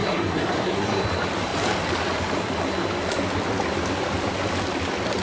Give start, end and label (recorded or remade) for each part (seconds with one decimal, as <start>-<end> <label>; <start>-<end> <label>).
0.0-1.0 remade; 1.0-5.2 recorded